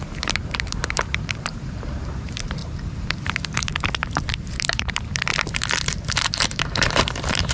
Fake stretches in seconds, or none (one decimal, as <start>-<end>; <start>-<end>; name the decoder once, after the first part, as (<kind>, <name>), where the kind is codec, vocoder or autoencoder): 0.0-2.6 (vocoder, BigVGAN v2); 3.2-5.3; 5.8-7.5